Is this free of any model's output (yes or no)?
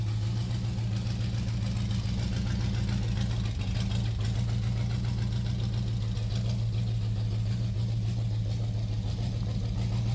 yes